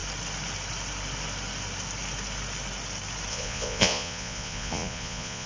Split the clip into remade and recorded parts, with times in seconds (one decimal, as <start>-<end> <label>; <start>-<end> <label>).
0.0-3.3 recorded; 3.3-5.5 remade